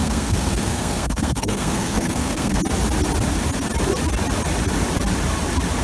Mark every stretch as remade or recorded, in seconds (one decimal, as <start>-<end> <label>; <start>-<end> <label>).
0.0-2.6 remade; 2.6-5.8 recorded